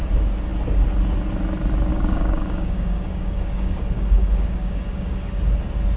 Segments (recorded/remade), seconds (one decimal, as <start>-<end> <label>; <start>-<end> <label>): 0.0-1.9 recorded; 1.9-5.3 remade; 5.3-6.0 recorded